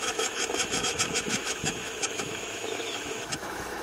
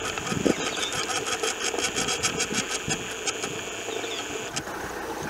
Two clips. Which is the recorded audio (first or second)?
second